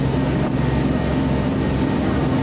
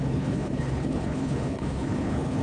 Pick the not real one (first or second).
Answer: second